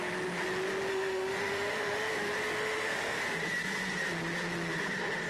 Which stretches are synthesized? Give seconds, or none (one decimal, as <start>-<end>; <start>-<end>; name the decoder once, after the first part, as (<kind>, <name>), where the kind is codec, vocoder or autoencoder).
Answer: 0.9-2.1 (autoencoder, DAC-VAE); 2.6-3.2